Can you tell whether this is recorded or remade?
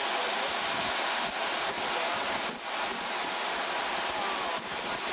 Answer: recorded